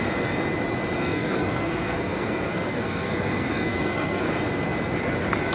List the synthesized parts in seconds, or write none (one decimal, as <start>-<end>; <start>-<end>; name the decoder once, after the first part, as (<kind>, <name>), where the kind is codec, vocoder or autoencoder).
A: 1.0-4.3 (codec, SNAC)